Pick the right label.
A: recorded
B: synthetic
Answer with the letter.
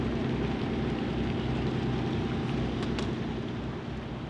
A